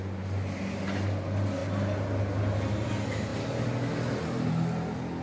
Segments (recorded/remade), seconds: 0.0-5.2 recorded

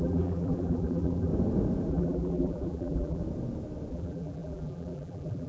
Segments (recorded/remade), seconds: 0.0-1.3 remade; 1.3-1.9 recorded; 1.9-3.2 remade; 3.2-3.9 recorded; 3.9-5.5 remade

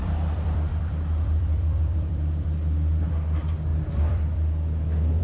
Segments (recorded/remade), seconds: 0.0-3.1 remade; 3.1-3.7 recorded; 3.7-5.2 remade